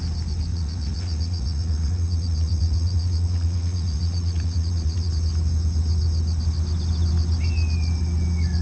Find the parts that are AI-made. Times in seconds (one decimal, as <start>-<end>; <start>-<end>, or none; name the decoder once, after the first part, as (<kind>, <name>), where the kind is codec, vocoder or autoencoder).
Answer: 0.5-5.1 (vocoder, Vocos)